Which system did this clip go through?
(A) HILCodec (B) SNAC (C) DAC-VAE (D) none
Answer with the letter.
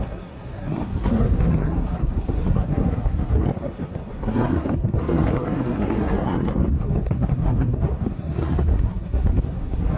B